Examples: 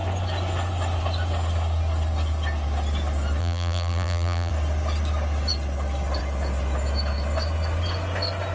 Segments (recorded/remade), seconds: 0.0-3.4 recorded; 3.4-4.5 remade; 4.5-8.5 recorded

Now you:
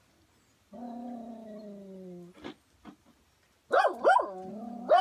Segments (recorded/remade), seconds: 0.0-5.0 recorded

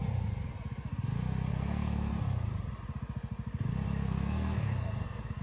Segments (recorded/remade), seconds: 0.0-1.5 recorded; 1.5-2.1 remade; 2.1-4.0 recorded; 4.0-5.4 remade

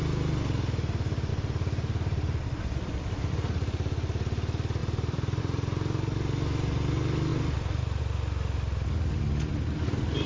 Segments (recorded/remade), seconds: 0.0-1.3 recorded; 1.3-3.3 remade; 3.3-4.8 recorded; 4.8-5.4 remade; 5.4-7.3 recorded; 7.3-8.0 remade; 8.0-10.3 recorded

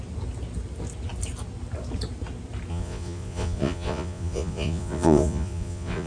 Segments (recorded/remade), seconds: 0.0-2.7 recorded; 2.7-6.1 remade

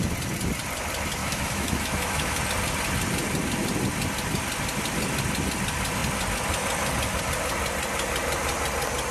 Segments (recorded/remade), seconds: 0.0-1.2 recorded; 1.2-2.4 remade; 2.4-9.1 recorded